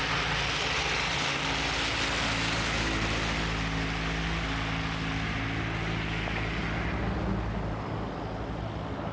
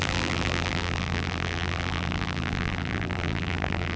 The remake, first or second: second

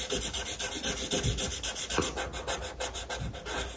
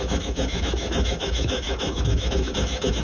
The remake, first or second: second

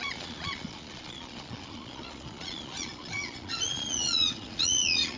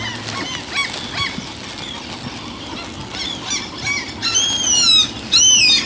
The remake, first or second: first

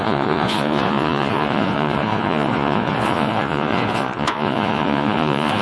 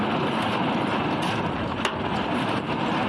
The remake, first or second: first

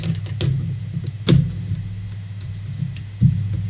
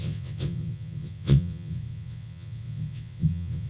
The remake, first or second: second